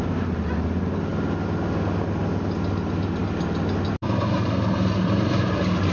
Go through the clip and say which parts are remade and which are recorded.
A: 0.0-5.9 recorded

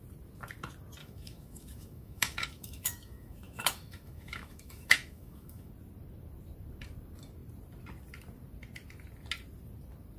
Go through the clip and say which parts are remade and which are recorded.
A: 0.0-1.0 recorded; 1.0-5.7 remade; 5.7-10.2 recorded

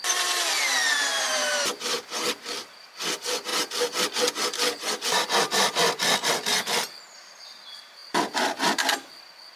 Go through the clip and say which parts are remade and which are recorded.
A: 0.0-1.1 recorded; 1.1-2.0 remade; 2.0-9.6 recorded